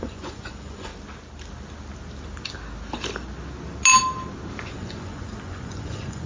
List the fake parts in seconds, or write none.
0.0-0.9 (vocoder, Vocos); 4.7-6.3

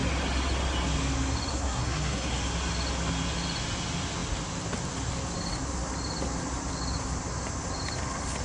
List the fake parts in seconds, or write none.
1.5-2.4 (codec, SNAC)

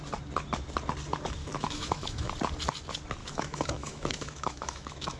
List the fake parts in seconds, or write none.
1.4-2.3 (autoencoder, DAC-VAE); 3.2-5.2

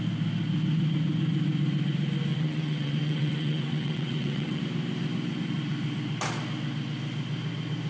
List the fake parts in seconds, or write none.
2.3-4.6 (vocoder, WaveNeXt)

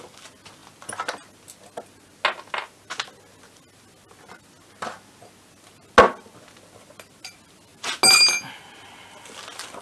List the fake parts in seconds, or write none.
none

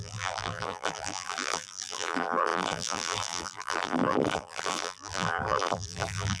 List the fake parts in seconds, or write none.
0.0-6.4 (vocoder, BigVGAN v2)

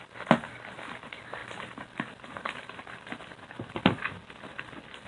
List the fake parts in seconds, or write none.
none

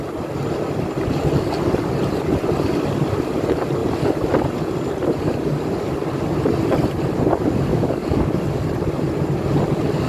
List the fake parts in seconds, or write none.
7.7-8.3 (codec, DAC)